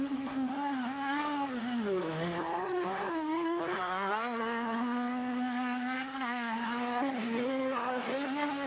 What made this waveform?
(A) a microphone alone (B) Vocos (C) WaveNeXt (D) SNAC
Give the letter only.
D